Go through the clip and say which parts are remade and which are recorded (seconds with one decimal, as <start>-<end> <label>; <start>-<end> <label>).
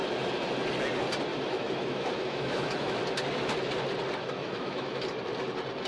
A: 0.0-1.3 recorded; 1.3-3.0 remade; 3.0-4.4 recorded; 4.4-5.0 remade; 5.0-5.9 recorded